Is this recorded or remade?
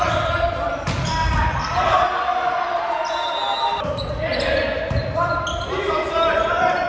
remade